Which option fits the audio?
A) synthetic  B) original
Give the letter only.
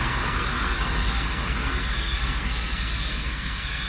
A